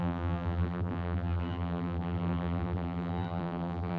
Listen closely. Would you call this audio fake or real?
fake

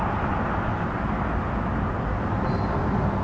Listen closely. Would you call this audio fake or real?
real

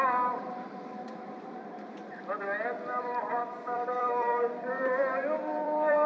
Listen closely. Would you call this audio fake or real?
fake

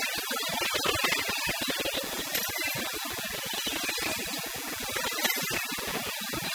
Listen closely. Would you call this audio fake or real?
real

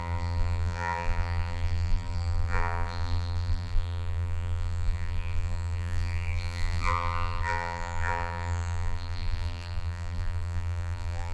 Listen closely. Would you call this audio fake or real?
fake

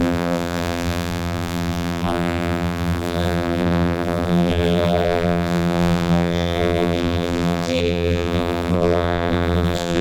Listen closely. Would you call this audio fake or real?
fake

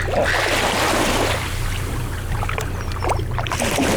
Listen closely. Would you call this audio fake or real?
real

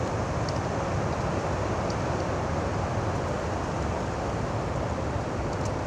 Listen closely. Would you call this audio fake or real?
real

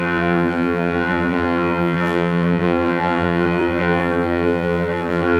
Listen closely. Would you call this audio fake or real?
fake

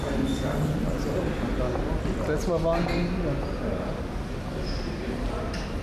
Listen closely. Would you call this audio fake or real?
real